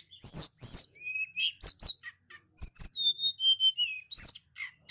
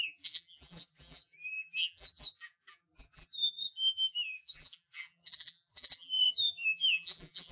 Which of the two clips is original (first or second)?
first